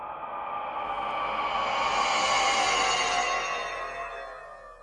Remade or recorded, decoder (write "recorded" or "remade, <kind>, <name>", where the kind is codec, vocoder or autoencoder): recorded